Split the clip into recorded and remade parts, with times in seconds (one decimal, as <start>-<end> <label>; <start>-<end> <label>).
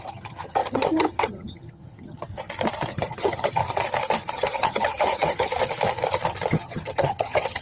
0.0-2.3 remade; 2.3-2.9 recorded; 2.9-3.6 remade; 3.6-4.3 recorded; 4.3-5.5 remade; 5.5-6.5 recorded; 6.5-7.6 remade